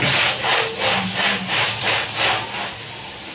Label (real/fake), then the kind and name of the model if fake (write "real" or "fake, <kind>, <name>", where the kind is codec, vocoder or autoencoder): real